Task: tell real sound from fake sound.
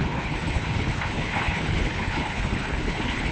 fake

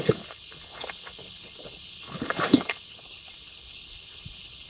fake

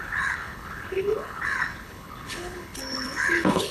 fake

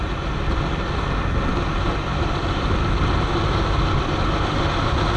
real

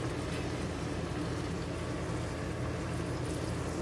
real